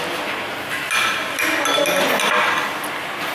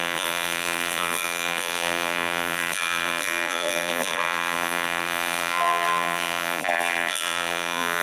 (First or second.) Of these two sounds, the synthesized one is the second